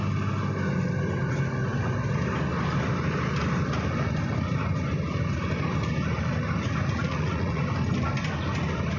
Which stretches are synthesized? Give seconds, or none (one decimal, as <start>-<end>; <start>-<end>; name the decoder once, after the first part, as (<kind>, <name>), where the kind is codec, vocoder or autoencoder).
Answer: 7.0-7.6 (vocoder, Vocos)